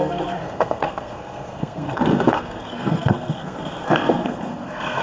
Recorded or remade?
remade